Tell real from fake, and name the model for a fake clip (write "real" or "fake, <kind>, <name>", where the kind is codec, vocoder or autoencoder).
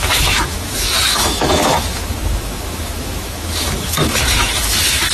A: fake, autoencoder, DAC-VAE